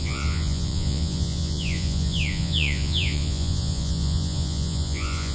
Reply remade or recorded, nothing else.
remade